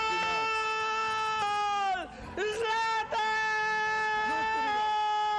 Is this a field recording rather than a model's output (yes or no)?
yes